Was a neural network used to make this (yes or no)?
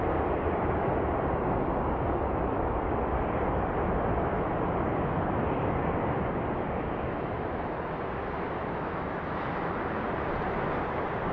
no